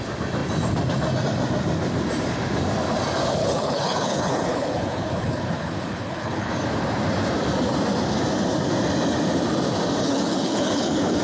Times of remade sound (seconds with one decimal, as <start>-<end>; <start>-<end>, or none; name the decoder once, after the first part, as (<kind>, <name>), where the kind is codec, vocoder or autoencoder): 3.4-6.5 (codec, HILCodec); 10.0-11.2